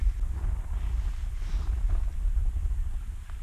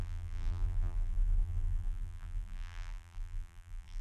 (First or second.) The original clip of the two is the first